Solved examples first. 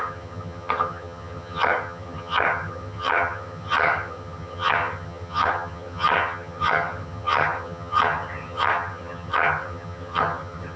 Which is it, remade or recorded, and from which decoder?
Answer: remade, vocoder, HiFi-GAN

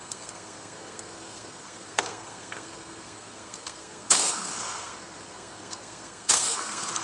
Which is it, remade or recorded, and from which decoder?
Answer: remade, codec, SNAC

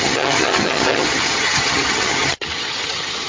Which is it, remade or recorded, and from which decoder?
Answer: remade, vocoder, HiFi-GAN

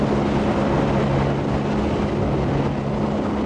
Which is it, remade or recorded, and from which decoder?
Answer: recorded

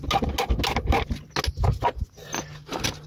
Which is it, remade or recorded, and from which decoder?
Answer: recorded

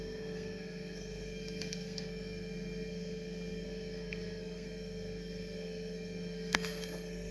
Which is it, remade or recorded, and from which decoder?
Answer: remade, codec, SNAC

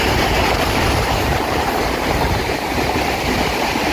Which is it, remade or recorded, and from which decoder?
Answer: remade, vocoder, BigVGAN v2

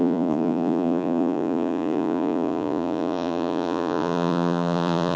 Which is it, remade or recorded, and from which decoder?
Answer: remade, vocoder, Vocos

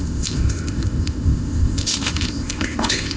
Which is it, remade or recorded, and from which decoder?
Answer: remade, codec, ZipCodec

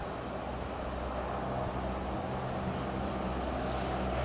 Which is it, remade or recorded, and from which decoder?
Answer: recorded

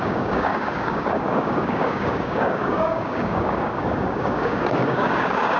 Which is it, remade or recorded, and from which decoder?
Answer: remade, codec, DAC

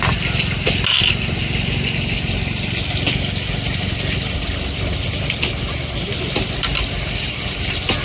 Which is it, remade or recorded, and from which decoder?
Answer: recorded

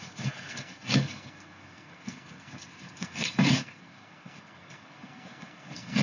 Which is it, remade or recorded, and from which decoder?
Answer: remade, codec, SNAC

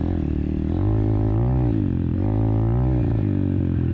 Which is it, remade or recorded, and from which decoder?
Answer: recorded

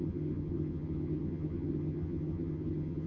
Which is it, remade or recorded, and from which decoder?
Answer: remade, vocoder, HiFi-GAN